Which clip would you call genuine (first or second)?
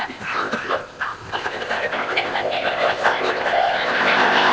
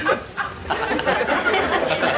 second